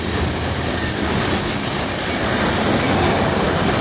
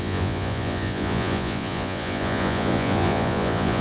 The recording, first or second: first